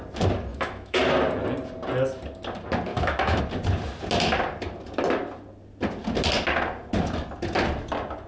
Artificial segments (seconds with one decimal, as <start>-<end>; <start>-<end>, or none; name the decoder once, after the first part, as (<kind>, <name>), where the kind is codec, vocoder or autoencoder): 0.5-1.0 (autoencoder, DAC-VAE); 2.9-3.4